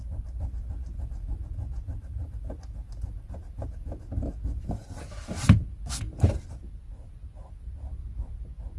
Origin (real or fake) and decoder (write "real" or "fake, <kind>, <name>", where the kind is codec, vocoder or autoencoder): real